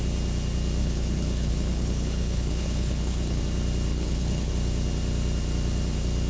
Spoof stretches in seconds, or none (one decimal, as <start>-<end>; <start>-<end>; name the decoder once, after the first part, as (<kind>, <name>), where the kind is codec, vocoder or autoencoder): 0.8-3.4 (codec, HILCodec); 3.9-4.5